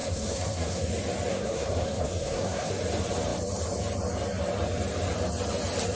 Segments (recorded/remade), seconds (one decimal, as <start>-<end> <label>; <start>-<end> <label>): 0.0-0.9 remade; 0.9-1.3 recorded; 1.3-2.8 remade; 2.8-5.9 recorded